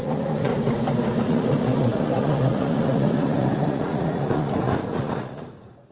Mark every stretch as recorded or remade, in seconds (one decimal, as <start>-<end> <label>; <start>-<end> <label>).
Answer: 0.0-0.5 remade; 0.5-1.2 recorded; 1.2-5.9 remade

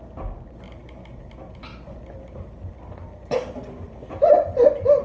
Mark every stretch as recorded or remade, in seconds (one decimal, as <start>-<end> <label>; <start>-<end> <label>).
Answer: 0.0-5.0 recorded

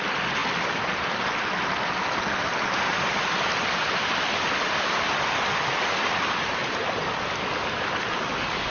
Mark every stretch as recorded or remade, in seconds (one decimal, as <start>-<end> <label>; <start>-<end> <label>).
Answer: 0.0-2.4 recorded; 2.4-7.5 remade; 7.5-8.7 recorded

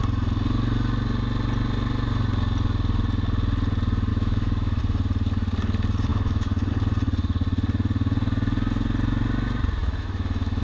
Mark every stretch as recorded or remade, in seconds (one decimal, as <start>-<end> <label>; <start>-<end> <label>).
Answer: 0.0-4.1 recorded; 4.1-4.8 remade; 4.8-6.1 recorded; 6.1-6.7 remade; 6.7-9.8 recorded; 9.8-10.6 remade

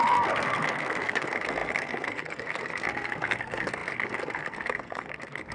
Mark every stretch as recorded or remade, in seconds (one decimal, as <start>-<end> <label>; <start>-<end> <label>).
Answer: 0.0-5.5 remade

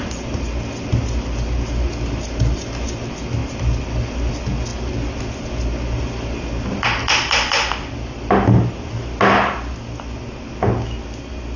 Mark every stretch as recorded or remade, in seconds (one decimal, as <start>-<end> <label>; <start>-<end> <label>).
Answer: 0.0-11.6 recorded

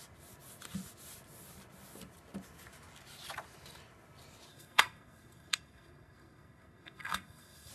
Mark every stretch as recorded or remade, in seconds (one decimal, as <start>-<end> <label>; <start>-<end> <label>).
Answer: 0.0-4.5 recorded; 4.5-7.7 remade